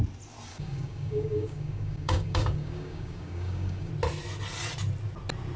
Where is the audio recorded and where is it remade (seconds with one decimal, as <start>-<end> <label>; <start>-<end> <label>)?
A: 0.0-0.5 recorded; 0.5-3.9 remade; 3.9-5.6 recorded